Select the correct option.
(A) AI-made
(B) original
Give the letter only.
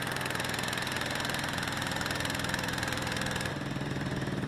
A